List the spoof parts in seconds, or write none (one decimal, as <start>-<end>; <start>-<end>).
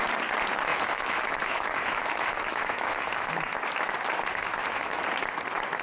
0.7-3.3; 4.3-5.0